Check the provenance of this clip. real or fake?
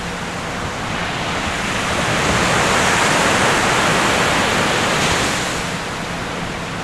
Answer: real